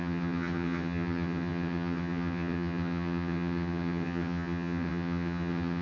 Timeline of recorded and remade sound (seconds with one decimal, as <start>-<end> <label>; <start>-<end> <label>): 0.0-5.8 remade